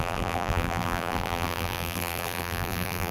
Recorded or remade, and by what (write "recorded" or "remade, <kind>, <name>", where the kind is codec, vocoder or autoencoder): remade, vocoder, BigVGAN v2